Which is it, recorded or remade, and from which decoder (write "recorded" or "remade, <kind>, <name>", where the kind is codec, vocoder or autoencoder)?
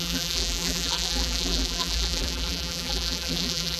remade, vocoder, BigVGAN v2